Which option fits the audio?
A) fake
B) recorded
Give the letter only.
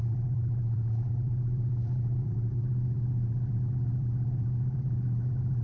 A